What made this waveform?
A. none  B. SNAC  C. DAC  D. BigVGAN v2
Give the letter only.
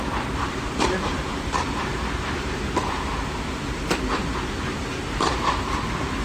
D